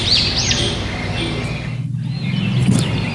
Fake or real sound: real